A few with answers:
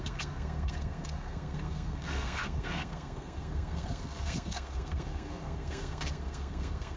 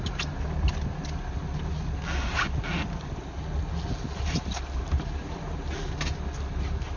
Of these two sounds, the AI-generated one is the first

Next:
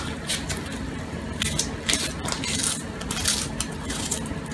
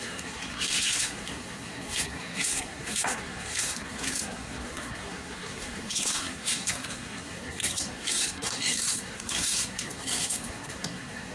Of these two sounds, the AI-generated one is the second